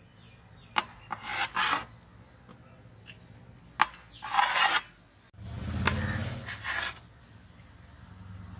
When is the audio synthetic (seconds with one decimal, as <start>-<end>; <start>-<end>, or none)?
none